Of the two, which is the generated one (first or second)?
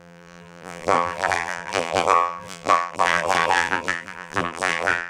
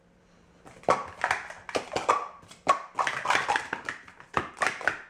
first